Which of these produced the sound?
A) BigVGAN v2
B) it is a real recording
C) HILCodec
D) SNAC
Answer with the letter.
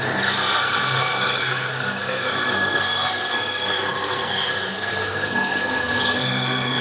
D